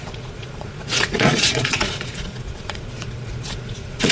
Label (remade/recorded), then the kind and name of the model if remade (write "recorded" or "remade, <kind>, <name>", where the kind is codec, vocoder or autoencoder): remade, vocoder, Vocos